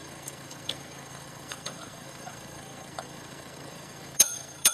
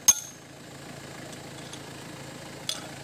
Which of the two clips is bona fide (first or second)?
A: second